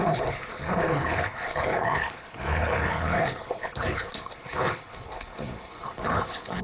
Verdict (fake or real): fake